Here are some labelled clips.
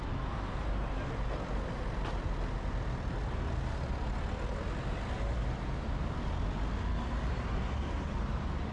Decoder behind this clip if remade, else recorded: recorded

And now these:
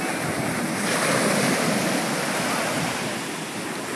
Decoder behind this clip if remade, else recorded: recorded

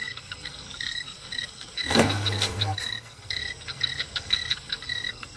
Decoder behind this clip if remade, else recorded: remade, codec, SNAC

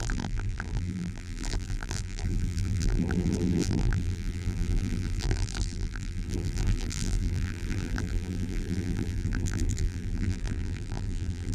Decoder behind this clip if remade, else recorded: remade, vocoder, BigVGAN v2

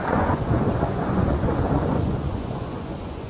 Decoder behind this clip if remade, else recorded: remade, vocoder, Vocos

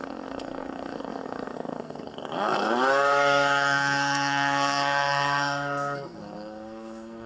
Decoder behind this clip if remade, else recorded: remade, codec, SNAC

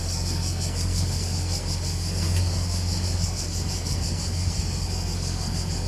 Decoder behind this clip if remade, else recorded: remade, codec, SNAC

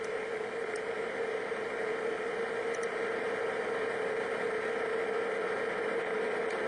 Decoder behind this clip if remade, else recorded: recorded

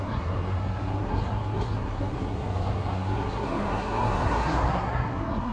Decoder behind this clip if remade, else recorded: remade, codec, SNAC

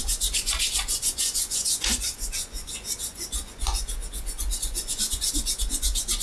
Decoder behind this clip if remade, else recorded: remade, vocoder, Vocos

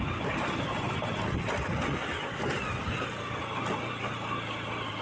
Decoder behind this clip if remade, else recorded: recorded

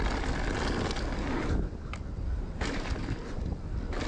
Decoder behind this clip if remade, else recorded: recorded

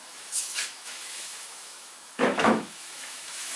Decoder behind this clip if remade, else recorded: remade, autoencoder, DAC-VAE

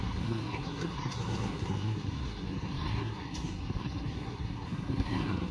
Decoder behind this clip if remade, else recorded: remade, codec, SNAC